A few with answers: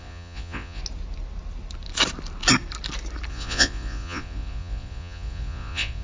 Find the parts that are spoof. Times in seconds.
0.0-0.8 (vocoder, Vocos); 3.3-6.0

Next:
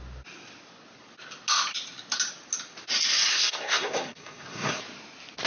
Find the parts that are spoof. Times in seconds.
3.3-4.8 (codec, SNAC)

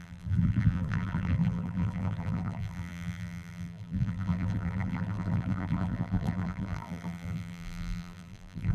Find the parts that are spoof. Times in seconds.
0.0-8.7 (vocoder, BigVGAN v2)

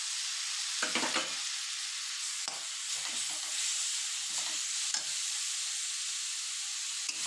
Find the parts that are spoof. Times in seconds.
none

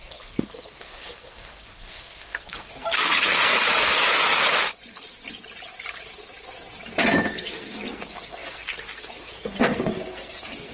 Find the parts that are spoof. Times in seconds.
0.0-3.5 (codec, SNAC); 7.3-10.7

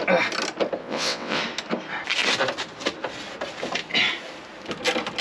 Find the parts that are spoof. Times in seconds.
0.8-1.4 (vocoder, WaveNeXt)